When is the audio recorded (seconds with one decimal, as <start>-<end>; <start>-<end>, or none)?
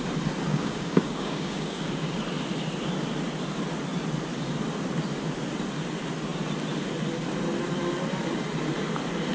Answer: 0.0-0.5; 2.2-9.3